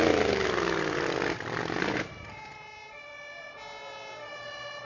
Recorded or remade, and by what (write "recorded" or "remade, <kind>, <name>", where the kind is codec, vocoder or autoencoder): recorded